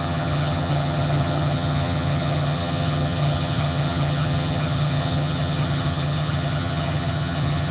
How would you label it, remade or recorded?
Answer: remade